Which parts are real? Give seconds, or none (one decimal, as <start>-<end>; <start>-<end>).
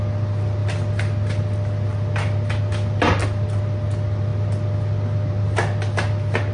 0.0-6.5